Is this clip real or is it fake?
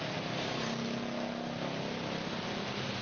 real